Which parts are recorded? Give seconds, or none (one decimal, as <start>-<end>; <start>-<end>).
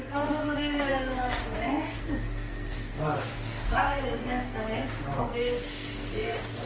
none